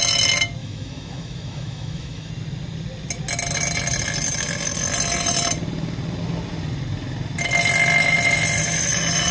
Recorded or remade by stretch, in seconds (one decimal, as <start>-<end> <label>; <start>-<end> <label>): 0.0-0.6 recorded; 0.6-2.3 remade; 2.3-9.3 recorded